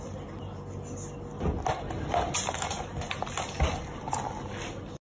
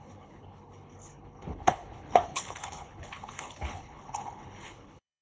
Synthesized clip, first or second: second